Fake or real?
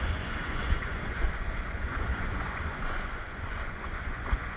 fake